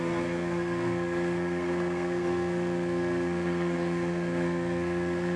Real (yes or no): no